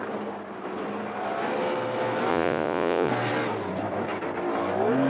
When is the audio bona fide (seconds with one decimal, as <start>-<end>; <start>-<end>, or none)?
0.0-2.3; 3.1-5.1